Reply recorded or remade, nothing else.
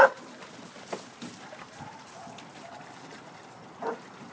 recorded